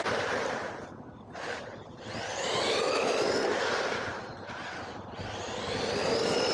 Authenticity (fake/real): real